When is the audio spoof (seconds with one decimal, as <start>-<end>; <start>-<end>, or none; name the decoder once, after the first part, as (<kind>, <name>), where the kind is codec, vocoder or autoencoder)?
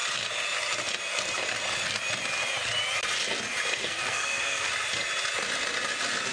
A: 3.8-4.7 (codec, SNAC)